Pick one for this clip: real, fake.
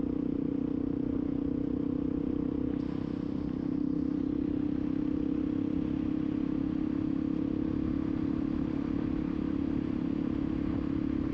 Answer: real